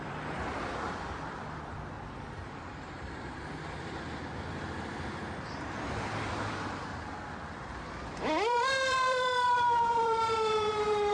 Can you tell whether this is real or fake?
fake